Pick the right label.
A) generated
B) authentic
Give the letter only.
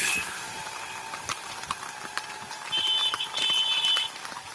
A